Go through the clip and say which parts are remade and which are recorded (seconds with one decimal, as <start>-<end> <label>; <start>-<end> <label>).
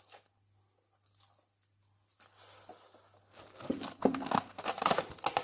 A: 0.0-4.0 recorded; 4.0-4.6 remade; 4.6-5.4 recorded